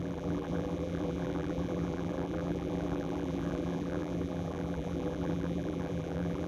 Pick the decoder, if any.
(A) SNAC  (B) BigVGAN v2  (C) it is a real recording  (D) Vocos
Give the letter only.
B